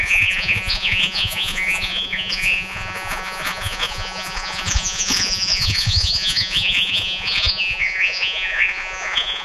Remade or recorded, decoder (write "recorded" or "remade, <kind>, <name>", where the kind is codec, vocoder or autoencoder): remade, vocoder, Vocos